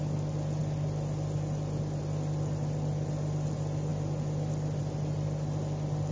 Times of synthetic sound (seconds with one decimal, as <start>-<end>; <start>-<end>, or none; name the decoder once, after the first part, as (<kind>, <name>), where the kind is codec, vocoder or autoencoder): none